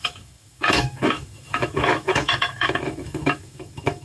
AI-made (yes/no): yes